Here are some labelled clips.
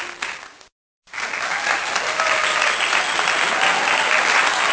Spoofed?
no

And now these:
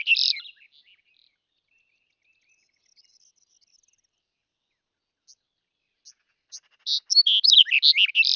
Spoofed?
no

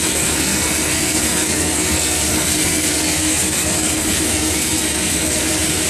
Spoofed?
yes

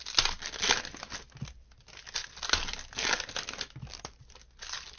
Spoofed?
no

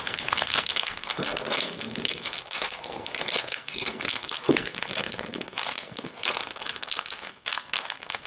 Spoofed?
yes